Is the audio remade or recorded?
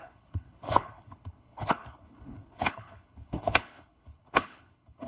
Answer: remade